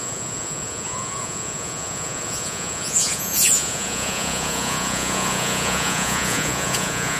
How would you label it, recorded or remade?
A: remade